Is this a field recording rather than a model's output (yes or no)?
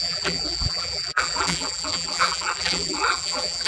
no